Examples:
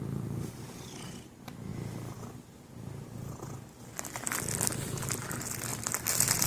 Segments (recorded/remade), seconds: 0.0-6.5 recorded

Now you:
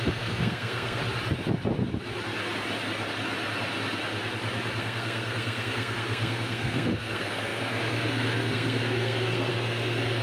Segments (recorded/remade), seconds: 0.0-1.0 remade; 1.0-4.8 recorded; 4.8-10.2 remade

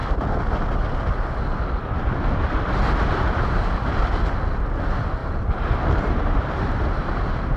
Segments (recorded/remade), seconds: 0.0-5.2 recorded; 5.2-6.8 remade; 6.8-7.6 recorded